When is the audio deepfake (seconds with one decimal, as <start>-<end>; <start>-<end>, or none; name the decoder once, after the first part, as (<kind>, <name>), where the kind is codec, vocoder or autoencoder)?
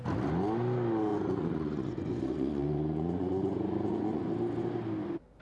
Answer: 1.1-4.3 (vocoder, Vocos)